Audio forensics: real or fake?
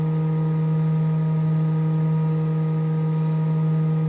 real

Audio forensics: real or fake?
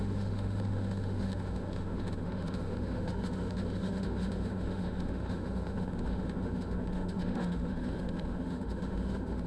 fake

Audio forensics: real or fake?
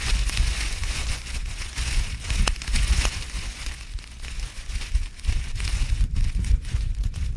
fake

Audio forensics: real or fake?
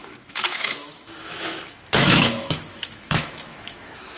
fake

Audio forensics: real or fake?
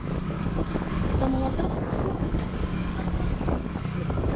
fake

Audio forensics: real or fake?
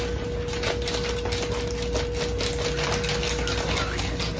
real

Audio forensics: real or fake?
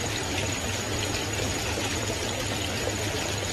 real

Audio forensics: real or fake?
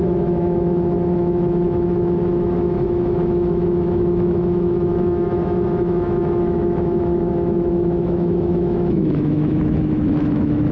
fake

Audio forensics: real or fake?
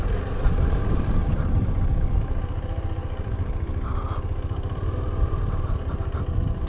fake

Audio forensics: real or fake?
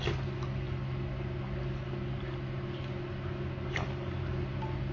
real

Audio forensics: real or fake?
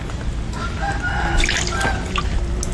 real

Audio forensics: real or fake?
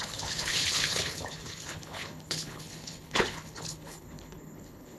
fake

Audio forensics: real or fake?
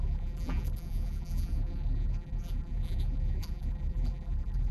fake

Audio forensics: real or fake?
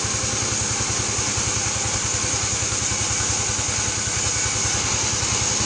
real